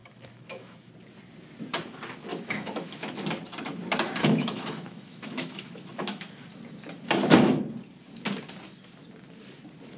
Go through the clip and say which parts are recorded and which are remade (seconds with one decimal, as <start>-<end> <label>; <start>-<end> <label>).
0.0-0.9 remade; 0.9-2.3 recorded; 2.3-3.1 remade; 3.1-4.2 recorded; 4.2-6.3 remade; 6.3-10.0 recorded